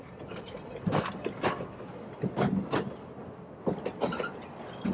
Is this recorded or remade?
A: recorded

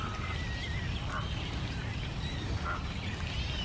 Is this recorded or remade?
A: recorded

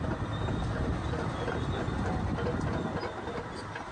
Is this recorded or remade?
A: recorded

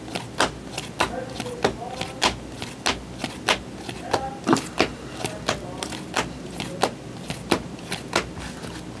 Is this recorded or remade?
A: recorded